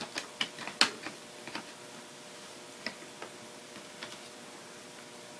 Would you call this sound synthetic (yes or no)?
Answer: no